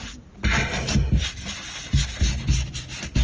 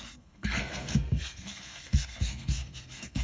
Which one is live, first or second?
first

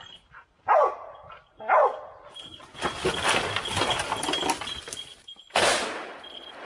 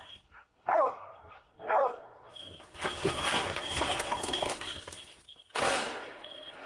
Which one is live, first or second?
first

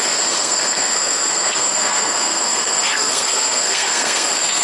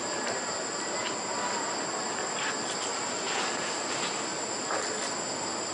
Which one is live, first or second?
second